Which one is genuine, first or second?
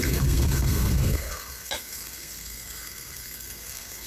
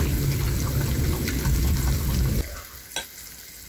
second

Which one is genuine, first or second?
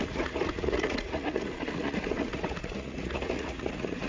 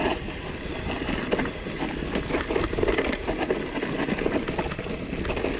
second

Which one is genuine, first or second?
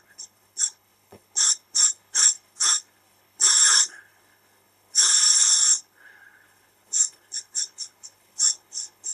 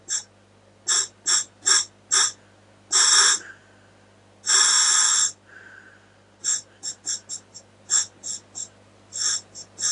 second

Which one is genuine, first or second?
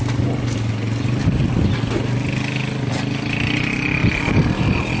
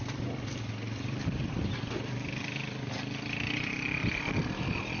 first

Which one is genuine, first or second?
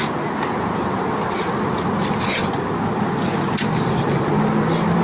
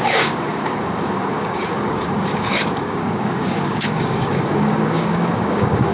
first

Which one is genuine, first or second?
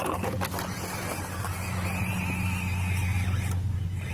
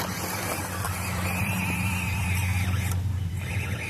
first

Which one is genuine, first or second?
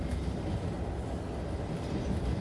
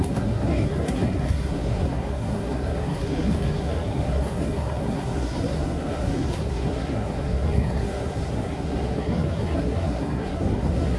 first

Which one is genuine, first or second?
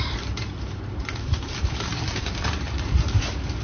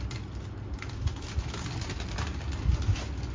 second